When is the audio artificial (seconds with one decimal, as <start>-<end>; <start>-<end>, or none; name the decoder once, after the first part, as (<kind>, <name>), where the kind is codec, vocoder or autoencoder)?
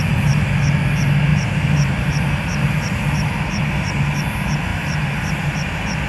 1.3-4.0 (vocoder, BigVGAN v2); 4.7-6.1